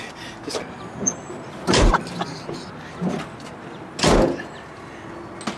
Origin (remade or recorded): recorded